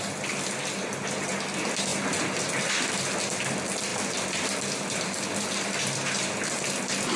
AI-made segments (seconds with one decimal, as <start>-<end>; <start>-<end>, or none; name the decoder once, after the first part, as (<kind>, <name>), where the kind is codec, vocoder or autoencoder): 1.9-2.7 (vocoder, BigVGAN v2); 3.9-6.7